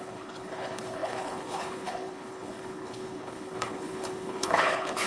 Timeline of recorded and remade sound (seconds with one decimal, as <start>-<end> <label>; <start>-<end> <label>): 0.0-5.1 remade